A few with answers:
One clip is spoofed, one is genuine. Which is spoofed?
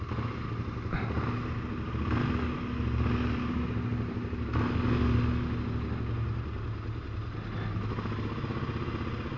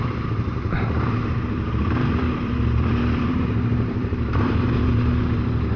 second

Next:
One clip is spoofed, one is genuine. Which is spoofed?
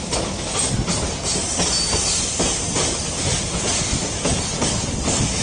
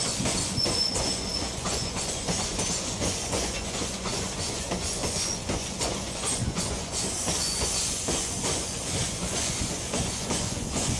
second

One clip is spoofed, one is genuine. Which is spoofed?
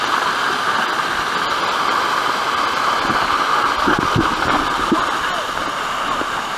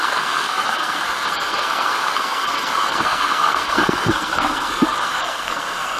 second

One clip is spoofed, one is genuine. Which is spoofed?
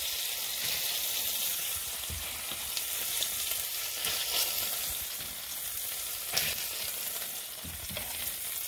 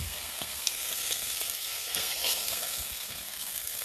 second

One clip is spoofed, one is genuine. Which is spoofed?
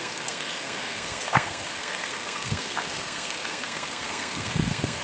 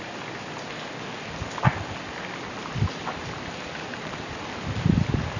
first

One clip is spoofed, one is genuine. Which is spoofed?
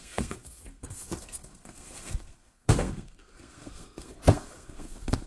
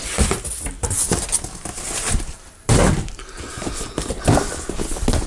first